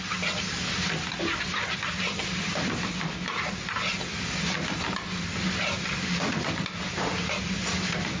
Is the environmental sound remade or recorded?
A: recorded